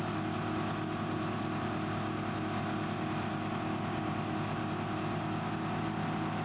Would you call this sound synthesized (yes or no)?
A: no